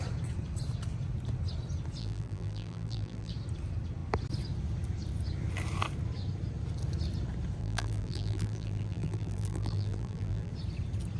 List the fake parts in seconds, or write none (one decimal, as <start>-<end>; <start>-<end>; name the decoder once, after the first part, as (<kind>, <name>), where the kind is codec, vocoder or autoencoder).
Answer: 2.0-3.3 (vocoder, BigVGAN v2); 7.6-10.5